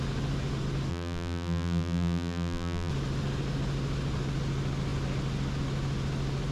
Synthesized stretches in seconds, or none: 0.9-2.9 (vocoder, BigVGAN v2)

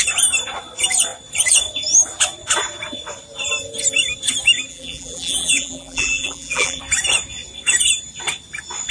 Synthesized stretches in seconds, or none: 4.7-6.8 (vocoder, BigVGAN v2)

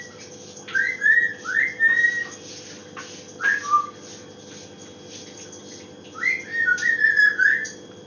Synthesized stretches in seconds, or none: 2.8-5.1 (vocoder, BigVGAN v2)

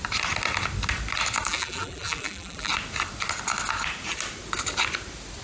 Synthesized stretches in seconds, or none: 1.5-2.7 (vocoder, BigVGAN v2)